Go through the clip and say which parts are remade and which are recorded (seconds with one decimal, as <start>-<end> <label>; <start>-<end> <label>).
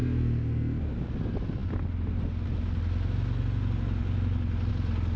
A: 0.0-0.8 remade; 0.8-5.2 recorded